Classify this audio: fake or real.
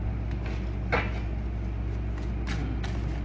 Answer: real